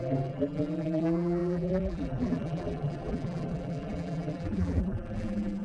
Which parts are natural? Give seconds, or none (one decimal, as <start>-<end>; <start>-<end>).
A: none